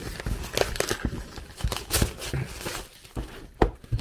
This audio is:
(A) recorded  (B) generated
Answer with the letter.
A